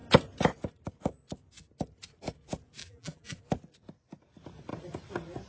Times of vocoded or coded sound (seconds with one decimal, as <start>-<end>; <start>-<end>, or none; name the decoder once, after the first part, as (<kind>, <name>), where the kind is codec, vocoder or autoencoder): 2.8-3.4 (vocoder, BigVGAN v2)